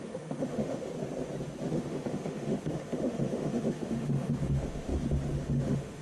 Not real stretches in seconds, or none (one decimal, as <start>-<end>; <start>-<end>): 0.0-0.9; 1.7-4.9; 5.4-6.0